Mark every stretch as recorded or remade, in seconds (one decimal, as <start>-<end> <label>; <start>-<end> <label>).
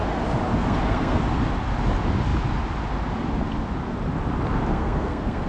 0.0-0.5 recorded; 0.5-1.2 remade; 1.2-4.7 recorded; 4.7-5.5 remade